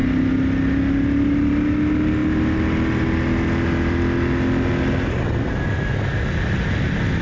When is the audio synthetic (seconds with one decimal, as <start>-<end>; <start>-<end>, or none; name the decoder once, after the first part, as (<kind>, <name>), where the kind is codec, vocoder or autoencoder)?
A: none